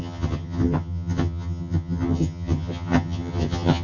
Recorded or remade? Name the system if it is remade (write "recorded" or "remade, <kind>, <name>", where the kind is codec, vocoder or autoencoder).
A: remade, vocoder, HiFi-GAN